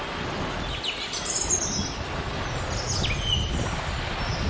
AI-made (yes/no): no